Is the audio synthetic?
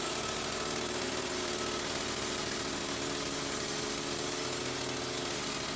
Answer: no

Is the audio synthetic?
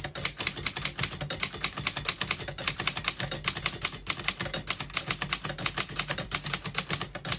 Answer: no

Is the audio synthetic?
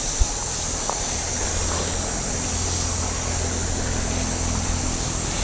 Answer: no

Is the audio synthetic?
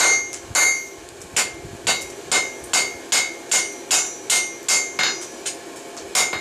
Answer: no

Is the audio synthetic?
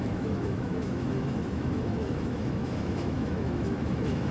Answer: yes